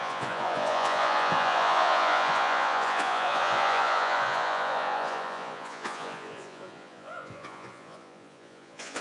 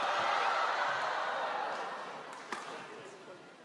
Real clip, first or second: second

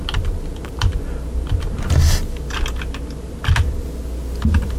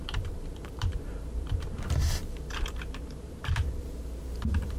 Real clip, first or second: first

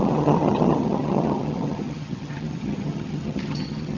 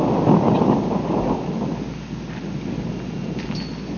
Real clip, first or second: second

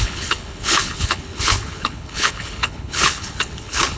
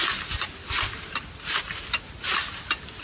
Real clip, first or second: second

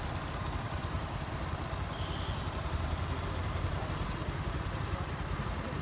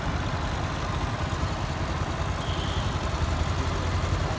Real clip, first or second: second